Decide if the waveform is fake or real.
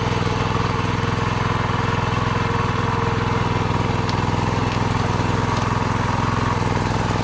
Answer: real